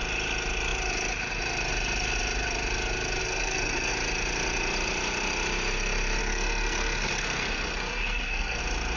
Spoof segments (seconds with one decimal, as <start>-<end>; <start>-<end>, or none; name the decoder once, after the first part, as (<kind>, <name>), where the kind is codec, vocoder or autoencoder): 3.2-3.9 (codec, SNAC); 6.2-8.6